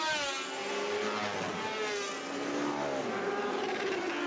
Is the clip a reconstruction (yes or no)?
no